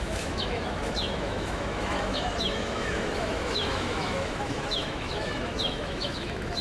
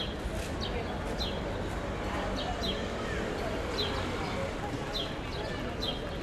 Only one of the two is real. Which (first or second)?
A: second